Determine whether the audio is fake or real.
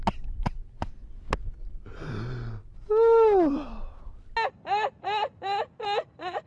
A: real